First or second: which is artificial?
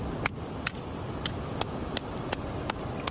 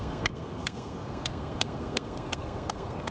second